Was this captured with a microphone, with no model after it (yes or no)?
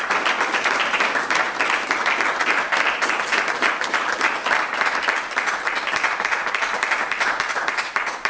yes